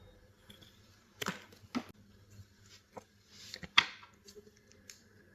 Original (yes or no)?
yes